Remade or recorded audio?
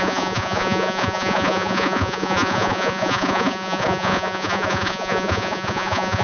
remade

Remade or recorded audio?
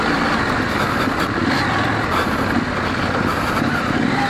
recorded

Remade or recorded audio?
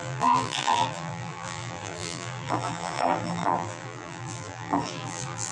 remade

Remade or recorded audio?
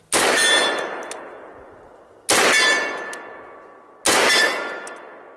recorded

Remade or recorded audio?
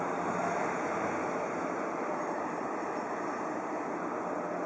recorded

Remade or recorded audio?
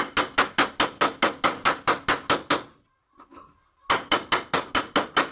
recorded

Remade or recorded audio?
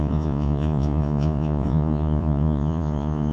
remade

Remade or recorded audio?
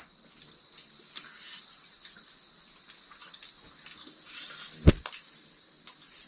recorded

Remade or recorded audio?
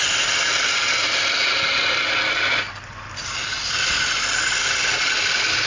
recorded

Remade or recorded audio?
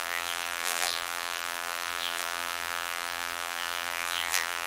remade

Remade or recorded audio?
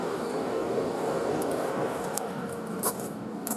remade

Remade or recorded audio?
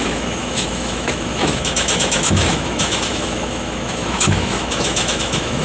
remade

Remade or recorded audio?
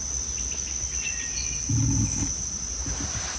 recorded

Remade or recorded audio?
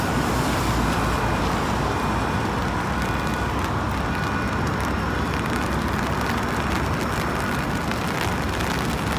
recorded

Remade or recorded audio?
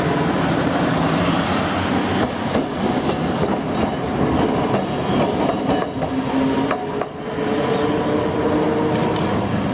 recorded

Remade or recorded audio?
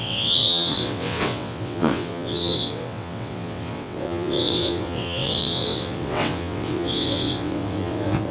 remade